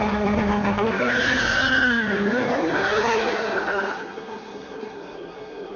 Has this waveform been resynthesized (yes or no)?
yes